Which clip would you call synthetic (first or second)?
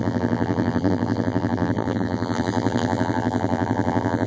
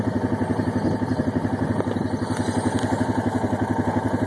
first